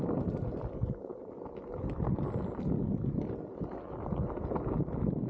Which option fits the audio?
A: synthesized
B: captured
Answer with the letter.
B